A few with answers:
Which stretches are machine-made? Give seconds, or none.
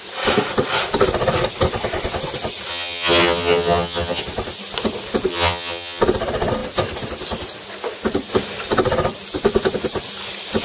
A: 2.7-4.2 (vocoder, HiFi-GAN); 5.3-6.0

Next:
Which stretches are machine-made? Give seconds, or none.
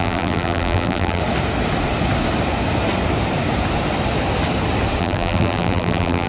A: 0.0-1.2 (vocoder, BigVGAN v2); 5.0-6.3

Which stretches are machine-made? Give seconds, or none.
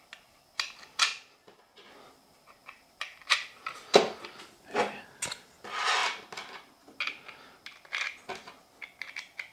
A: 2.6-5.2 (vocoder, BigVGAN v2)